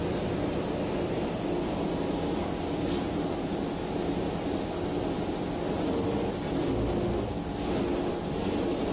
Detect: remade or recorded recorded